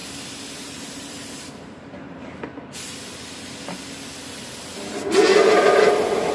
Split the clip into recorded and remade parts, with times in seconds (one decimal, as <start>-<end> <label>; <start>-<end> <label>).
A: 0.0-0.6 recorded; 0.6-2.5 remade; 2.5-6.3 recorded